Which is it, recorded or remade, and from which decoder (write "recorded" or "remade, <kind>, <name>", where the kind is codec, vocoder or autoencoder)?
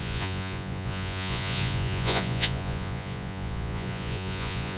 remade, vocoder, Vocos